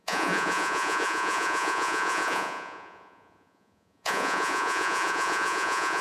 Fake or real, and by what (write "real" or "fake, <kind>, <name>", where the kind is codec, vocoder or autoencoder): fake, vocoder, Vocos